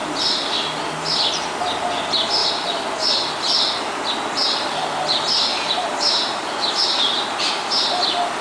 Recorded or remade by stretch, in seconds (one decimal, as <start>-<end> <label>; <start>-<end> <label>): 0.0-2.4 recorded; 2.4-3.3 remade; 3.3-5.5 recorded; 5.5-7.7 remade; 7.7-8.4 recorded